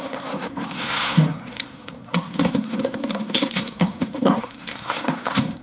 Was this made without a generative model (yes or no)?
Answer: no